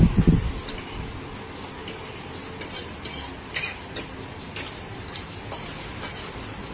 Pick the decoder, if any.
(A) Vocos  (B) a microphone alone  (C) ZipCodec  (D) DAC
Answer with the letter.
B